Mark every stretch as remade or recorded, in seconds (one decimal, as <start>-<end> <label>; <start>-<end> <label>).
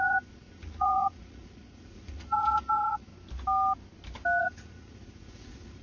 0.0-3.1 remade; 3.1-4.4 recorded; 4.4-5.8 remade